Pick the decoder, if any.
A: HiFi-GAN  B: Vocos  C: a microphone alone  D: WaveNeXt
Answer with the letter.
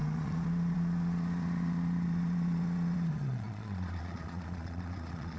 B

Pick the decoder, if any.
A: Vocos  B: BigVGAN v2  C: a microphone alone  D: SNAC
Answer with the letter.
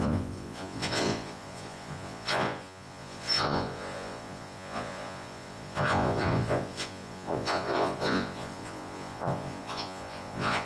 A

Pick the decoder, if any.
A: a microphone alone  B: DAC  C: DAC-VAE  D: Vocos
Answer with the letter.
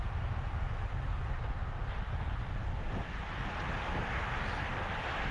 A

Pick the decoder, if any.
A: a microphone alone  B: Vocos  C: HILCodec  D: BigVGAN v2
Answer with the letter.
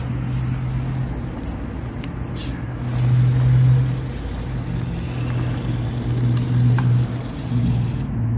A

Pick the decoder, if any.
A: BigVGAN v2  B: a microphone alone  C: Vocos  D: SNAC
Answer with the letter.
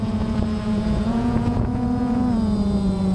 C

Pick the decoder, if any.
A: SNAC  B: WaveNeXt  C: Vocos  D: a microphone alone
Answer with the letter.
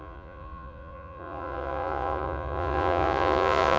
C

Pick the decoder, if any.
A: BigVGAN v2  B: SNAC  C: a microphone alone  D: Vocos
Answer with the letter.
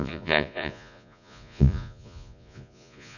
D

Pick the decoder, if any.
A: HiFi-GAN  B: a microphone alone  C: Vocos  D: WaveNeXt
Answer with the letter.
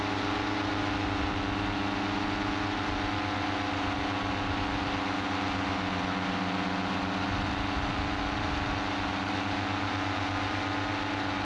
B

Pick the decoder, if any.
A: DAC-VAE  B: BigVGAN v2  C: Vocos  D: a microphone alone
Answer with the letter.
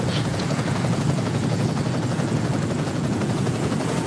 C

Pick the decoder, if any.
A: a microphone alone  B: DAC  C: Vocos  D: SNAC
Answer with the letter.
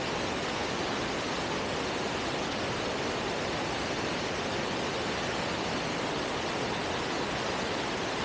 A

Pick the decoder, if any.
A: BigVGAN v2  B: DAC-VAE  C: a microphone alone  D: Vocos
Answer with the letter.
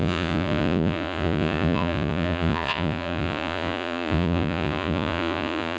D